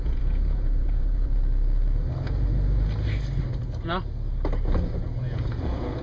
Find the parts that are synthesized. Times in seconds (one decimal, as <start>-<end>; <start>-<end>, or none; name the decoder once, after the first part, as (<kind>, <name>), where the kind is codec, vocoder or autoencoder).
0.0-1.4 (vocoder, Vocos); 5.0-6.0